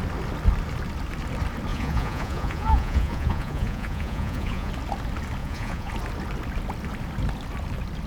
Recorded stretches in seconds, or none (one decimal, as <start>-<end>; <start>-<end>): 0.0-1.7; 4.7-5.4; 5.9-8.1